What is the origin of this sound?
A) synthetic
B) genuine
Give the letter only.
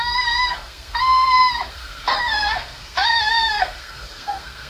A